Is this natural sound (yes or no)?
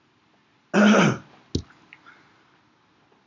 yes